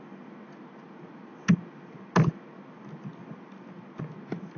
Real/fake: real